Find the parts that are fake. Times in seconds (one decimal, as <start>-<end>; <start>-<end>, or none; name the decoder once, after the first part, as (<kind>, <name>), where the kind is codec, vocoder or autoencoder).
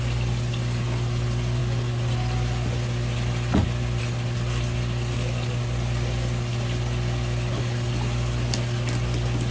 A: none